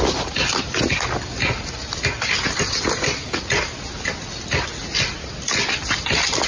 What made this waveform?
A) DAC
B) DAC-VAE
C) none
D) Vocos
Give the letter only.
C